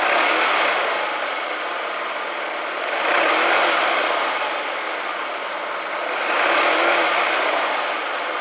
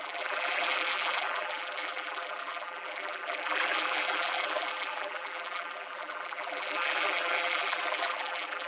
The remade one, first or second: second